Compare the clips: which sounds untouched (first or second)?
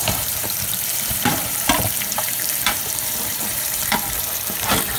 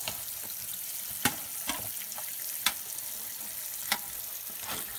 second